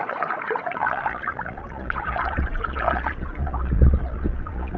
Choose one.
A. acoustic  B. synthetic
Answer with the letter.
B